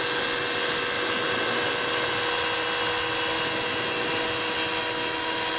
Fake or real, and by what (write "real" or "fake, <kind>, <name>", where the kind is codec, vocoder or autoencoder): real